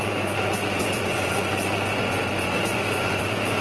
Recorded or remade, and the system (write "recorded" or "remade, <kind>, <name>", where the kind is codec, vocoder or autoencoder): remade, vocoder, Vocos